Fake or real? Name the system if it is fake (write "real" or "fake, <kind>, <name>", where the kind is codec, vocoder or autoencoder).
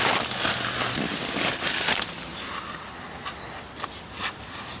real